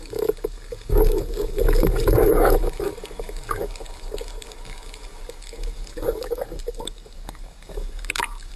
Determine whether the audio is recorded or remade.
remade